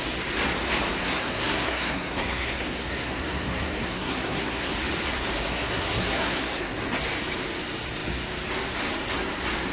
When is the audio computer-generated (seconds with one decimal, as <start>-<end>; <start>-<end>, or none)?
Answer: 1.0-4.7; 5.5-6.7

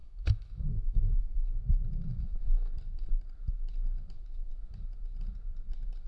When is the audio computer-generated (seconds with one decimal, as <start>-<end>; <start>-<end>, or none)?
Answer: 0.0-1.6; 2.1-2.7

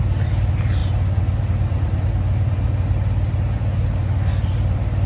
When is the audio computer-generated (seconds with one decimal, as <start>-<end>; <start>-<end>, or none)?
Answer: none